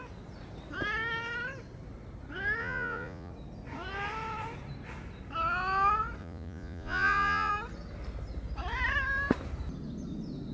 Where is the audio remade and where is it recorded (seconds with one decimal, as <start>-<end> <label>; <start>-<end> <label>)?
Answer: 0.0-2.6 recorded; 2.6-3.3 remade; 3.3-6.2 recorded; 6.2-7.5 remade; 7.5-10.5 recorded